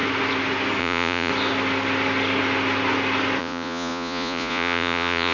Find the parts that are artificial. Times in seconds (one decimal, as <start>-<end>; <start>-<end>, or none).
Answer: 0.8-1.3; 3.4-5.3